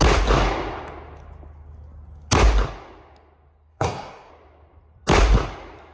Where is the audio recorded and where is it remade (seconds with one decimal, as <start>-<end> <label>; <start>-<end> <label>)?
0.0-3.7 recorded; 3.7-4.3 remade; 4.3-5.9 recorded